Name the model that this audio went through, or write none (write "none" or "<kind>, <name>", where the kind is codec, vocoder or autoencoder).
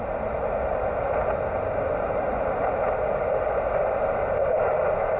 none